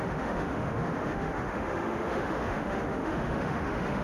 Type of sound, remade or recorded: remade